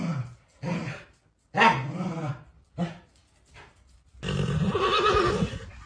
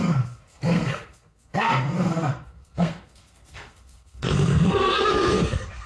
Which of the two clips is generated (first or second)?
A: second